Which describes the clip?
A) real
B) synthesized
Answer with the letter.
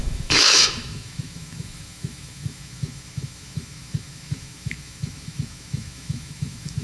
B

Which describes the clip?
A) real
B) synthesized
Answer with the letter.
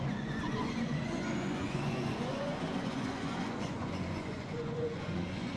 B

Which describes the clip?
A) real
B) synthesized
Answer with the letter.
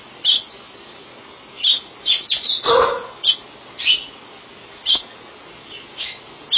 A